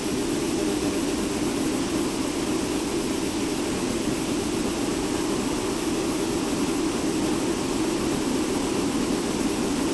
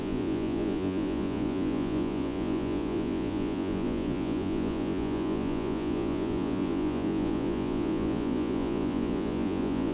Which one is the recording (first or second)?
first